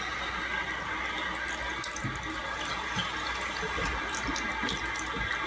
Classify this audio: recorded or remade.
recorded